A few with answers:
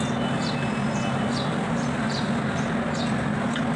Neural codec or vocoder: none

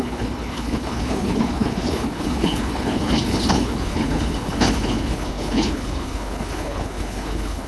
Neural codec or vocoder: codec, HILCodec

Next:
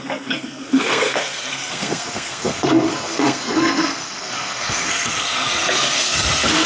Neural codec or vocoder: codec, SNAC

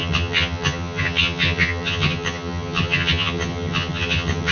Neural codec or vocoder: vocoder, HiFi-GAN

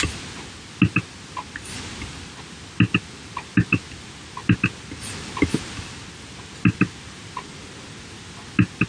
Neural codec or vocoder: none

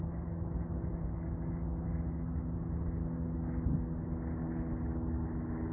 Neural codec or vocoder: none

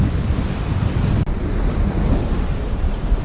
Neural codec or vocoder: none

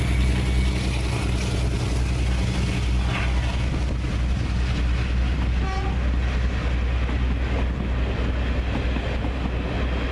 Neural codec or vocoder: none